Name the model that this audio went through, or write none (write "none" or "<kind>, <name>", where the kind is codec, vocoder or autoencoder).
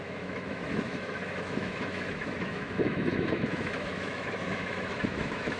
autoencoder, DAC-VAE